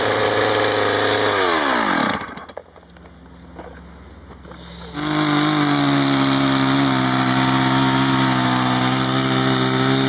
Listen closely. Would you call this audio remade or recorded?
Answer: recorded